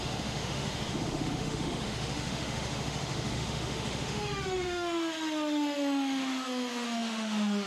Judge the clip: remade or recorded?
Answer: remade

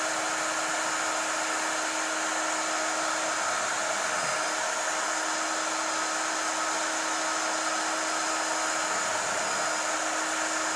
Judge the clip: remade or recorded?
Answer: recorded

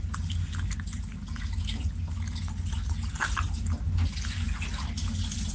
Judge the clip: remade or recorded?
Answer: recorded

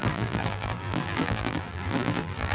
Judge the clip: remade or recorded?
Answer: remade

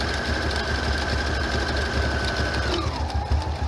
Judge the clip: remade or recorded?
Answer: recorded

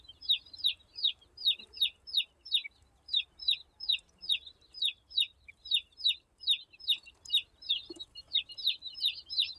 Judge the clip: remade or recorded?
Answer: remade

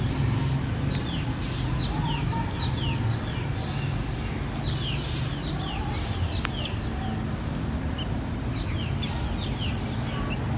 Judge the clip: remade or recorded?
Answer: recorded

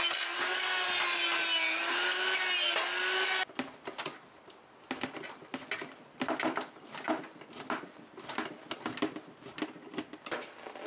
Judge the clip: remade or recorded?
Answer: recorded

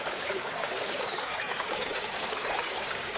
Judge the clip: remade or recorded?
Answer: remade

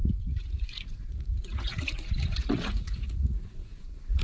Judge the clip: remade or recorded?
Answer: remade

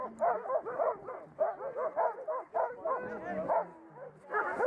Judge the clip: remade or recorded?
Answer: recorded